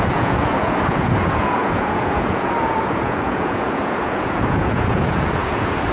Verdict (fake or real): fake